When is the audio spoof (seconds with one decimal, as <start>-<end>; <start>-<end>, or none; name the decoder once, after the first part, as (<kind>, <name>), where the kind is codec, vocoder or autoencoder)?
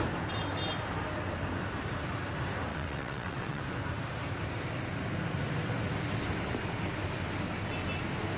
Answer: 2.7-3.6 (vocoder, WaveNeXt)